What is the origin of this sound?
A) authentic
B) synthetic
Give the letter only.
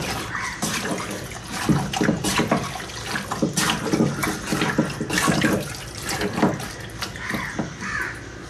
A